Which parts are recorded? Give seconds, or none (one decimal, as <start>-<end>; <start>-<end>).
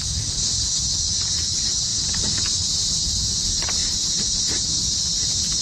0.0-5.6